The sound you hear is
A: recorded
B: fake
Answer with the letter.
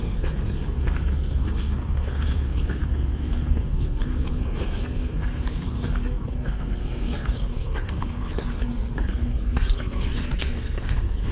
B